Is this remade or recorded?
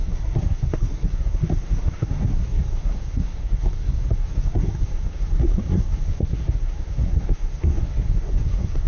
remade